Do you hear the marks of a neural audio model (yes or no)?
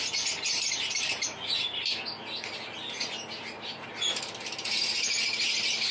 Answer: no